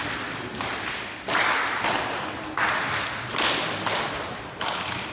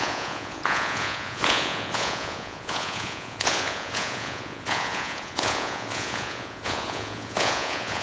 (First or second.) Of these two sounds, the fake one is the second